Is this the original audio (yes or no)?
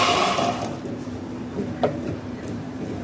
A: no